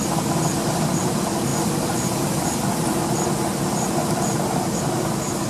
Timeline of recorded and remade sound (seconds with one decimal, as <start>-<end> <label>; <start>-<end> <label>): 0.0-5.5 recorded